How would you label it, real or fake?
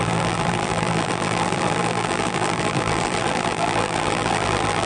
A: fake